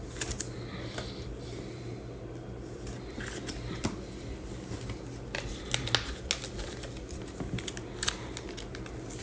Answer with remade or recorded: recorded